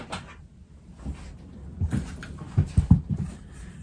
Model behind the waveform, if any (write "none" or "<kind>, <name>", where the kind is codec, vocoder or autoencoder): none